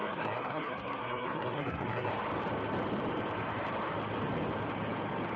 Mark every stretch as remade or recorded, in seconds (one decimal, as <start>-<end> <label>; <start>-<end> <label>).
0.0-2.1 remade; 2.1-5.4 recorded